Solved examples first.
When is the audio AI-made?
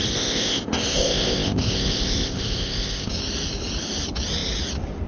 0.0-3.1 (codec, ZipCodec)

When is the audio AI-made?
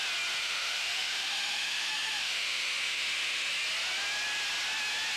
0.4-3.5 (autoencoder, DAC-VAE)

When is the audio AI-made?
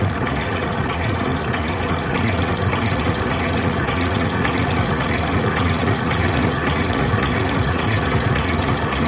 0.0-9.1 (vocoder, Vocos)